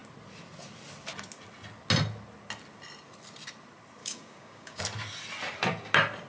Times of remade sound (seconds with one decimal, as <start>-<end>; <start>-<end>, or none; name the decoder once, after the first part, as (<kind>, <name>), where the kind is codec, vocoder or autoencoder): 4.0-4.8 (codec, DAC)